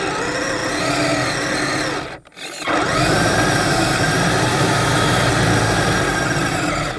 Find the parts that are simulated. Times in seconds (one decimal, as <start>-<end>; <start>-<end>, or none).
4.5-5.1

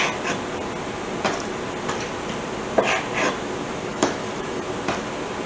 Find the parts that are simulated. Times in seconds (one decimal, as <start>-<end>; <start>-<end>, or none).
3.9-4.6

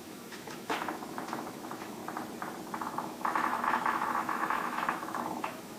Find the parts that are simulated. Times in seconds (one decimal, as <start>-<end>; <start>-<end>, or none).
0.0-2.0; 2.8-5.8

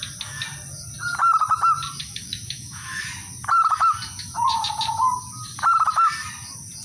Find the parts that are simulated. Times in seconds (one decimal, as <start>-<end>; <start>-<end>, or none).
2.0-3.0

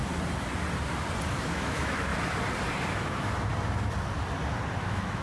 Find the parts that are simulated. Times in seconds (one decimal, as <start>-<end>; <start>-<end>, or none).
1.3-2.1; 2.9-3.5; 4.8-5.2

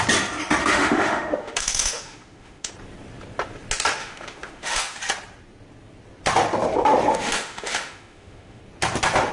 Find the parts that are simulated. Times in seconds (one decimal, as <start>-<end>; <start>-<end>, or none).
0.6-2.7; 4.0-5.0; 7.1-8.6